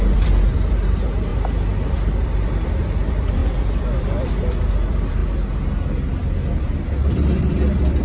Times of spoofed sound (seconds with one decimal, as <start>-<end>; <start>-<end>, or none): 0.0-1.3; 2.0-5.2; 6.6-8.0